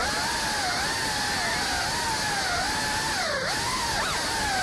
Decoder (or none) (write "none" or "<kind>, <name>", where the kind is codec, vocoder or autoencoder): none